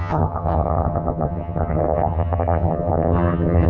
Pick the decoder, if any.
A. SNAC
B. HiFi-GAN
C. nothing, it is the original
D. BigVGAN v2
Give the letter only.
B